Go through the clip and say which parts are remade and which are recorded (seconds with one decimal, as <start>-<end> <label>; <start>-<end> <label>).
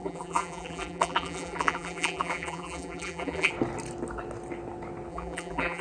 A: 0.0-3.5 remade; 3.5-5.1 recorded; 5.1-5.8 remade